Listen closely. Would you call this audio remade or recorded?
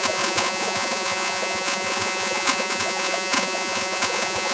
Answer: remade